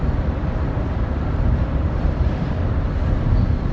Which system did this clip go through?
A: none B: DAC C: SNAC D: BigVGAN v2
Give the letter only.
A